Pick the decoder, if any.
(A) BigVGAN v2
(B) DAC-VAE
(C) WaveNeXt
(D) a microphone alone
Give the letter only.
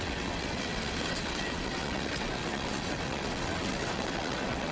C